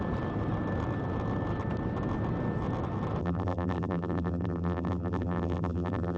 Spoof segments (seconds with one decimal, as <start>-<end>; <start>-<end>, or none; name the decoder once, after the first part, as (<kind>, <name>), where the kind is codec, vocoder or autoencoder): 3.2-6.2 (vocoder, BigVGAN v2)